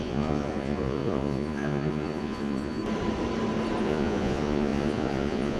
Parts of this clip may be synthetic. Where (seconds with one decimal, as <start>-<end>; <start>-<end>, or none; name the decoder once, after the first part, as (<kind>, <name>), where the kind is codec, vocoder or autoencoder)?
0.0-2.8 (vocoder, Vocos); 3.8-5.6